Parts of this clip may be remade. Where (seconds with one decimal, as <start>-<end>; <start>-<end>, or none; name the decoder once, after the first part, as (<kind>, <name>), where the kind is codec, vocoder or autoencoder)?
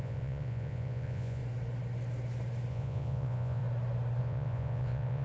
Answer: 0.0-1.4 (vocoder, Vocos); 2.7-3.6; 4.2-5.2